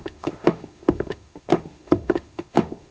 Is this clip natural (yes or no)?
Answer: no